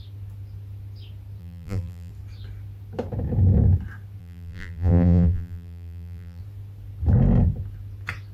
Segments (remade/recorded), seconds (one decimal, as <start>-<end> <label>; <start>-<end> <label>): 0.0-1.4 recorded; 1.4-2.1 remade; 2.1-4.2 recorded; 4.2-6.4 remade; 6.4-8.3 recorded